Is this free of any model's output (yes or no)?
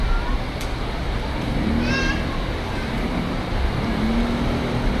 yes